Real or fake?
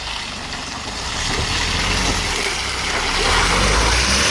real